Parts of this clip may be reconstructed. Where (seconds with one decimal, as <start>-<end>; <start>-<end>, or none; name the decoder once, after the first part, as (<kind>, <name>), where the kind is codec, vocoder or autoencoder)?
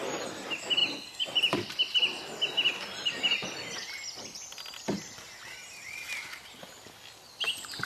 0.8-1.7 (vocoder, BigVGAN v2); 3.4-5.6